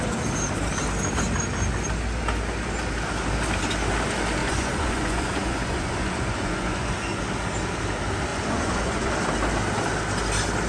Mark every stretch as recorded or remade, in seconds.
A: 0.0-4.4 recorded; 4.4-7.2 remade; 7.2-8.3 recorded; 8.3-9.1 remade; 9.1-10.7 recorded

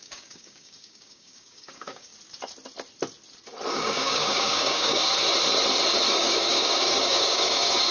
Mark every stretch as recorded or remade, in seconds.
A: 0.0-2.1 remade; 2.1-3.7 recorded; 3.7-5.1 remade; 5.1-6.1 recorded; 6.1-7.9 remade

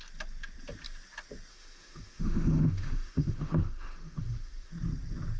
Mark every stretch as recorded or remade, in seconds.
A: 0.0-1.5 recorded; 1.5-4.7 remade; 4.7-5.4 recorded

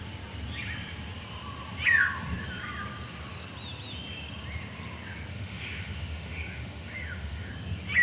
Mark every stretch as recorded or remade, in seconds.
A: 0.0-5.3 recorded; 5.3-7.5 remade; 7.5-8.0 recorded

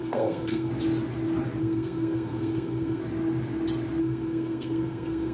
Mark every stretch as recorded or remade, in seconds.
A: 0.0-0.7 remade; 0.7-1.6 recorded; 1.6-3.0 remade; 3.0-4.0 recorded; 4.0-5.3 remade